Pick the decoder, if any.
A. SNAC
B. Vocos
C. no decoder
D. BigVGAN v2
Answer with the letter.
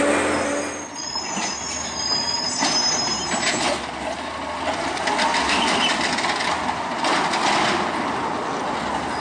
C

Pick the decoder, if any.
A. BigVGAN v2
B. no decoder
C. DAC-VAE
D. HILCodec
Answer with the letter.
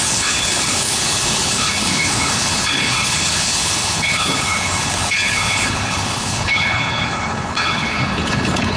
D